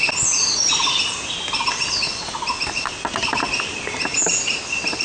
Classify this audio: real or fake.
real